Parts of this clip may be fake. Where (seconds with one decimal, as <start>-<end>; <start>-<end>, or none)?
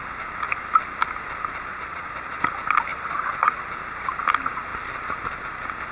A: 1.7-2.4; 2.9-3.6